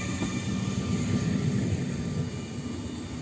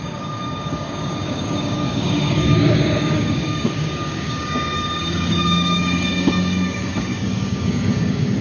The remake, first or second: second